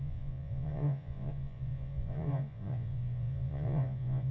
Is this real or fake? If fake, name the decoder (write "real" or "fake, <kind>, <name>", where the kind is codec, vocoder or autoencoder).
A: fake, vocoder, Vocos